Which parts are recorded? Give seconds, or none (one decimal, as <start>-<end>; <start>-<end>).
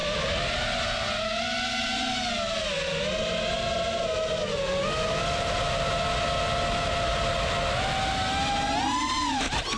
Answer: 0.0-9.8